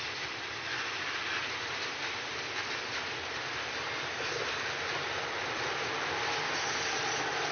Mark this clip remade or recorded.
recorded